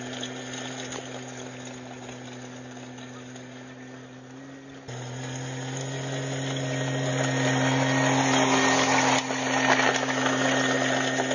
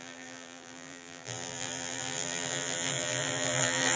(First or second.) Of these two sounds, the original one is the first